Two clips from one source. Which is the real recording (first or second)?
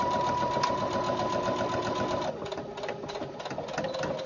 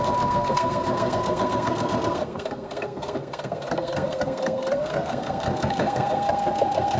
first